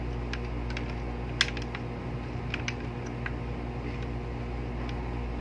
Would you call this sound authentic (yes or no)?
yes